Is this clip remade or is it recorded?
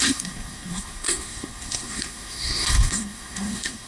remade